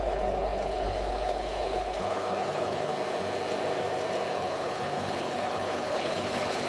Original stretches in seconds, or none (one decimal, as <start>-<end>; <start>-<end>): 2.9-4.3